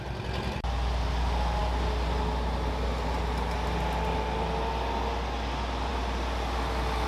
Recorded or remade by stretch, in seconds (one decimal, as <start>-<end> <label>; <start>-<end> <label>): 0.0-7.1 recorded